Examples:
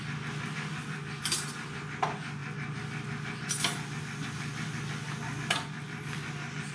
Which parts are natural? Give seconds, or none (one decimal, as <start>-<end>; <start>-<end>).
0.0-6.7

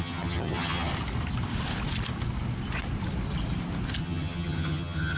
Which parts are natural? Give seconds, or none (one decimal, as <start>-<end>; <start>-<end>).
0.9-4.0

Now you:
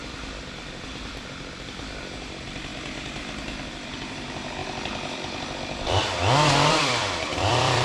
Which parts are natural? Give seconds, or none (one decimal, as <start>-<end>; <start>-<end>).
2.7-3.7

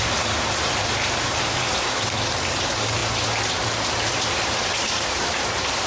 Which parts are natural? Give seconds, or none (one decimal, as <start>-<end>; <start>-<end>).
0.0-5.9